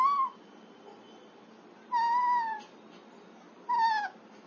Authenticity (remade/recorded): recorded